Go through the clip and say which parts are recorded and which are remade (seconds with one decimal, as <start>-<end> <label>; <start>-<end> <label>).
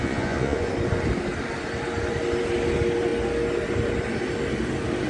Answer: 0.0-0.7 remade; 0.7-5.1 recorded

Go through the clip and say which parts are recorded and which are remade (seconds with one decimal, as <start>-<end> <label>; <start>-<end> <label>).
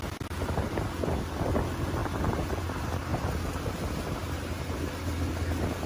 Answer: 0.0-5.9 recorded